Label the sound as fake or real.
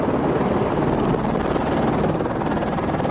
real